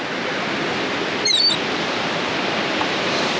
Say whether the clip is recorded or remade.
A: recorded